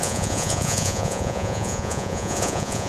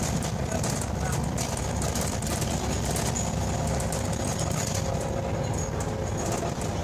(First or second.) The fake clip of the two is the first